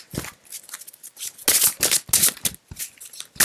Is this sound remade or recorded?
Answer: recorded